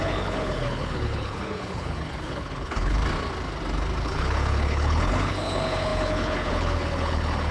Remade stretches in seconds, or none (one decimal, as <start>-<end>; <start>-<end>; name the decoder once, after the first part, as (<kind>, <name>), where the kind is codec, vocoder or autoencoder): 0.0-3.0 (codec, HILCodec); 4.0-7.5